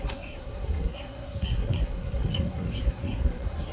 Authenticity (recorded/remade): remade